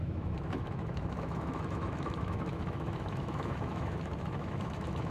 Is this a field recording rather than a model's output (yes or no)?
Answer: no